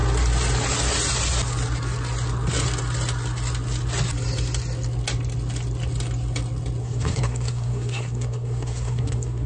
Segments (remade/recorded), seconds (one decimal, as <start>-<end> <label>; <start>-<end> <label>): 0.0-6.8 recorded; 6.8-9.5 remade

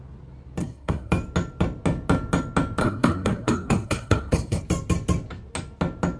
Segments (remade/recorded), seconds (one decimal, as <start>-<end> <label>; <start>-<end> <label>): 0.0-0.6 recorded; 0.6-1.1 remade; 1.1-2.8 recorded; 2.8-4.6 remade; 4.6-6.2 recorded